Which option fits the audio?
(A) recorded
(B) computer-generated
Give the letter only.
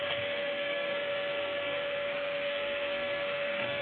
B